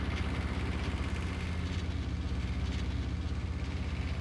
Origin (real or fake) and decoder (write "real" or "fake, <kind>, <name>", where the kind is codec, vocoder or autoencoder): real